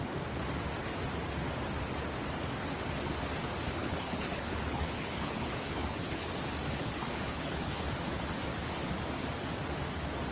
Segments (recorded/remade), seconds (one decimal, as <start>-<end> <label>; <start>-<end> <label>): 0.0-3.8 recorded; 3.8-6.3 remade; 6.3-6.8 recorded; 6.8-8.2 remade; 8.2-10.3 recorded